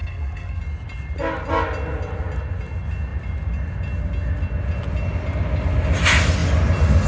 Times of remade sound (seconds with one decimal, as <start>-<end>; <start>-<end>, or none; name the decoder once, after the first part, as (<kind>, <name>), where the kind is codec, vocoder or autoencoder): 0.0-0.6 (codec, SNAC)